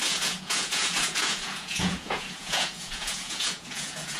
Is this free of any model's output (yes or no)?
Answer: no